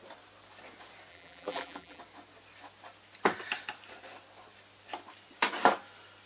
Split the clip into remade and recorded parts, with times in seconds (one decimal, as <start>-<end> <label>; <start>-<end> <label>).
0.0-1.1 recorded; 1.1-2.0 remade; 2.0-6.3 recorded

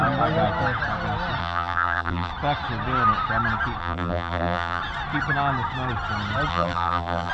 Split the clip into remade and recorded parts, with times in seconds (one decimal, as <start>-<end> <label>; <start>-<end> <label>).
0.0-1.4 recorded; 1.4-2.3 remade; 2.3-3.8 recorded; 3.8-4.8 remade; 4.8-6.5 recorded; 6.5-7.3 remade